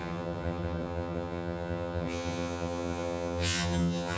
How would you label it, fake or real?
fake